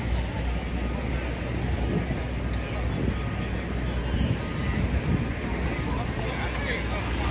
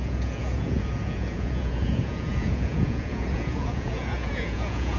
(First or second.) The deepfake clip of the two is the second